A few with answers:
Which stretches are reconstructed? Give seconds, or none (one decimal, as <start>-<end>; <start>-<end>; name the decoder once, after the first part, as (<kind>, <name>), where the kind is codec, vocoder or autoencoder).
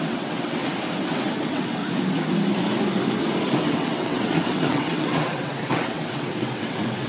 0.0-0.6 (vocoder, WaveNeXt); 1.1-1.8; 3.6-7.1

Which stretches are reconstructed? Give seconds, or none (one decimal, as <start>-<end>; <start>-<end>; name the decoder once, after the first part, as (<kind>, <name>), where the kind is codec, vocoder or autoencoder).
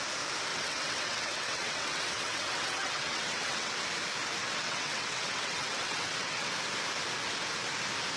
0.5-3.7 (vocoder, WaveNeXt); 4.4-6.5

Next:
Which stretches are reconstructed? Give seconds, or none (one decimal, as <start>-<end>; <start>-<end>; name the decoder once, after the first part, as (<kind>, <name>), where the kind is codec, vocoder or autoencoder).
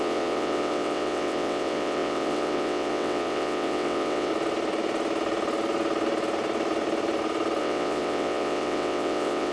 0.0-4.3 (vocoder, WaveNeXt); 7.6-9.5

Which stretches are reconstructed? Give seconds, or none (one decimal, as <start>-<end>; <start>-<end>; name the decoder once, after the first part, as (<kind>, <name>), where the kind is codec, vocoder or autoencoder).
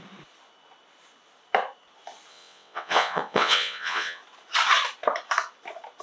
2.3-4.2 (vocoder, WaveNeXt)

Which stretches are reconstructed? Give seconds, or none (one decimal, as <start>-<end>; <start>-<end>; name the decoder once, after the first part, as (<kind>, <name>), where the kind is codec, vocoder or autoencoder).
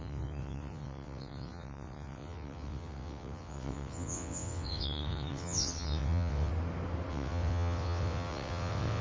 0.0-6.5 (vocoder, WaveNeXt); 7.1-9.0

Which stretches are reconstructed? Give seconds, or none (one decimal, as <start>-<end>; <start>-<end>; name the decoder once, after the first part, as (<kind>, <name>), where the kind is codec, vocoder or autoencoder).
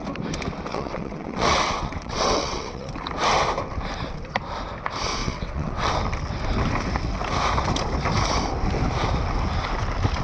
0.7-2.9 (vocoder, WaveNeXt); 5.2-5.9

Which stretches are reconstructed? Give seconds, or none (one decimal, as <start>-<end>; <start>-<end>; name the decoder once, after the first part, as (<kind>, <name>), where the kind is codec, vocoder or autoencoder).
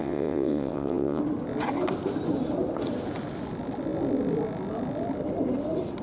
0.0-1.2 (vocoder, WaveNeXt)